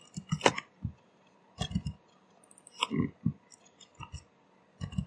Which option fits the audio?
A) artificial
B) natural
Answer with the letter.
B